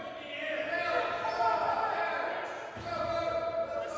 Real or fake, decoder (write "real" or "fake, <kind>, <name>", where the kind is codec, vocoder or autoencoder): real